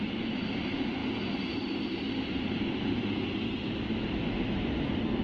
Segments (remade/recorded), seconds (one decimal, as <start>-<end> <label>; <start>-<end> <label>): 0.0-5.2 recorded

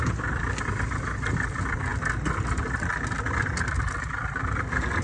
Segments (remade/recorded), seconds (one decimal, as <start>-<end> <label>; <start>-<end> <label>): 0.0-5.0 recorded

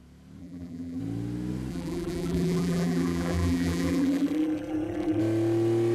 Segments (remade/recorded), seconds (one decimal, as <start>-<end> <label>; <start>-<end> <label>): 0.0-0.4 recorded; 0.4-1.0 remade; 1.0-1.7 recorded; 1.7-5.2 remade; 5.2-5.9 recorded

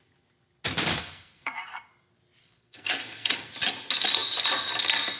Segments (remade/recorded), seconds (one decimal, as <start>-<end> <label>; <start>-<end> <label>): 0.0-1.0 recorded; 1.0-1.9 remade; 1.9-2.4 recorded; 2.4-3.5 remade; 3.5-5.2 recorded

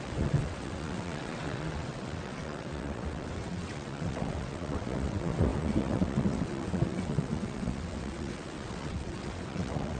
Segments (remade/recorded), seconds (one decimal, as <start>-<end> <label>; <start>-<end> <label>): 0.0-10.0 remade

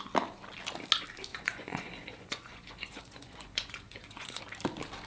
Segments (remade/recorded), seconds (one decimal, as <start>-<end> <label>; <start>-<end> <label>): 0.0-1.3 recorded; 1.3-4.4 remade; 4.4-5.1 recorded

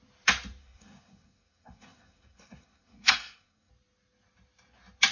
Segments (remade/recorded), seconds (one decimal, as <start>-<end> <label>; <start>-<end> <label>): 0.0-0.6 recorded; 0.6-3.7 remade; 3.7-5.1 recorded